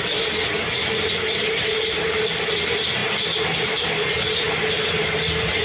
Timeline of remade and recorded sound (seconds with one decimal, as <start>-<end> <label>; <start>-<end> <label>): 0.0-5.6 recorded